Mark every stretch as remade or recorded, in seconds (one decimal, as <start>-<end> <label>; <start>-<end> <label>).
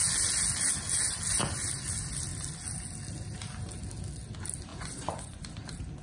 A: 0.0-4.7 recorded; 4.7-5.5 remade; 5.5-6.0 recorded